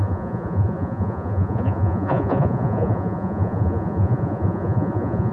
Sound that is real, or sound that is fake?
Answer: fake